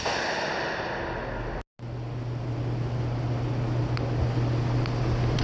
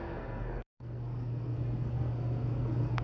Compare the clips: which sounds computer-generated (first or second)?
second